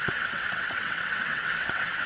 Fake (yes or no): yes